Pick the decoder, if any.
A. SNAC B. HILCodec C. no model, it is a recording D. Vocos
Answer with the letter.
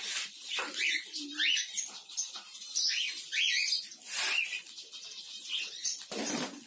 C